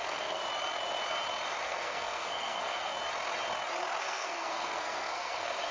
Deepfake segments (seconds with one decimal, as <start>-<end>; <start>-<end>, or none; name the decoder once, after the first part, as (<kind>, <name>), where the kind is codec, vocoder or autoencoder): 0.0-0.4 (codec, SNAC); 1.6-2.9; 4.0-5.7